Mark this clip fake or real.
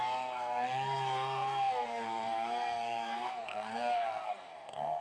fake